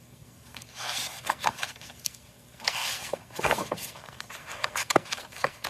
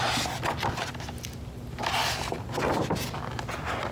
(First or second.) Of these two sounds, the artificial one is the first